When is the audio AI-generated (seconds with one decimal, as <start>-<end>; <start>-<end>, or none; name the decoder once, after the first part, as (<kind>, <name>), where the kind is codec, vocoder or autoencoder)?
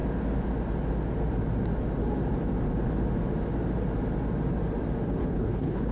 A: 5.2-5.9 (codec, HILCodec)